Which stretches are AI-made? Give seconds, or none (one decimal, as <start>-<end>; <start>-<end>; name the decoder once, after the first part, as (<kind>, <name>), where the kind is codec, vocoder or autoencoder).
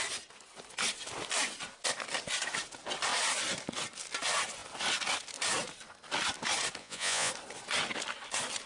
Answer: 6.8-7.3 (vocoder, Vocos)